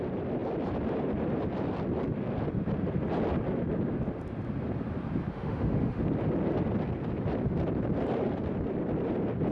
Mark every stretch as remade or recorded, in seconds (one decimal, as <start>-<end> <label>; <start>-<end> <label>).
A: 0.0-5.3 recorded; 5.3-6.0 remade; 6.0-9.5 recorded